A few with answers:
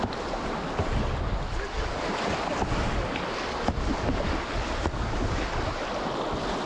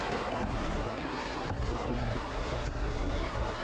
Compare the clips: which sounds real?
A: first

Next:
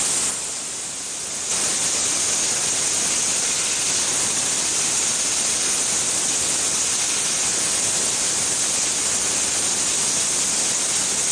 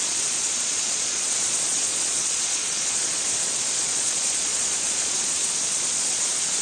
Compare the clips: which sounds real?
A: first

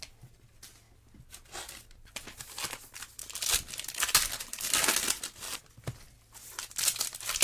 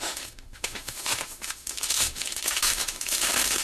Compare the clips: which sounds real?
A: first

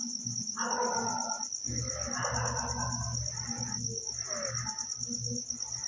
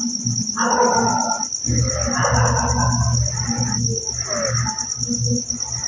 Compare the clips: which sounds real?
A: first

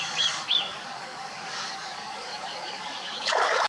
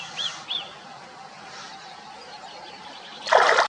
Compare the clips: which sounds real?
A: second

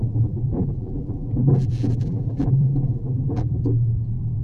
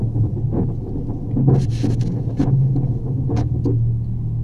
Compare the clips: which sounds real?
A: second